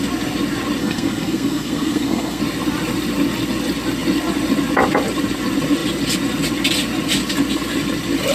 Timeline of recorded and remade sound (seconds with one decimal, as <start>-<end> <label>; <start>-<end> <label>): 0.0-0.8 recorded; 0.8-2.4 remade; 2.4-8.3 recorded